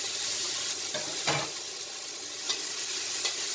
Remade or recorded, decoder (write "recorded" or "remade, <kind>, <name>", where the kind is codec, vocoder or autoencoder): recorded